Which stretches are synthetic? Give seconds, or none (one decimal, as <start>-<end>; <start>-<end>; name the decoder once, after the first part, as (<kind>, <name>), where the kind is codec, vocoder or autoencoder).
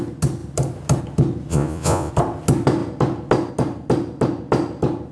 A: 1.5-2.1 (vocoder, Vocos)